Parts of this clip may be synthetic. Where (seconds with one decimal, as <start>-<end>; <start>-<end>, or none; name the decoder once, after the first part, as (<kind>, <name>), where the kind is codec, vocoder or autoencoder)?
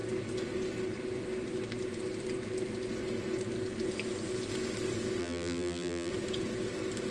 5.2-6.1 (vocoder, BigVGAN v2)